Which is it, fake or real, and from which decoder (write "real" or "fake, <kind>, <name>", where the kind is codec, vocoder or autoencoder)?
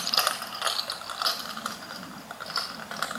real